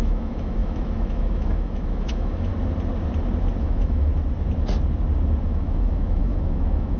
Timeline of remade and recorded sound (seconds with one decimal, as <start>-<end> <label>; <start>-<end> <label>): 0.0-2.5 remade; 2.5-3.6 recorded; 3.6-4.1 remade; 4.1-5.5 recorded; 5.5-7.0 remade